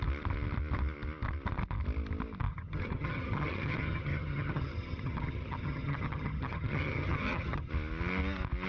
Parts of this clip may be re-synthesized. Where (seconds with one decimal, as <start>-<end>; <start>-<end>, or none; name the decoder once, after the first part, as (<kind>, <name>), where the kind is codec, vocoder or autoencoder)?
2.5-7.7 (vocoder, HiFi-GAN)